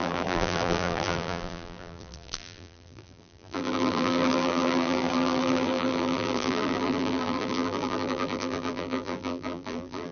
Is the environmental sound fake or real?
fake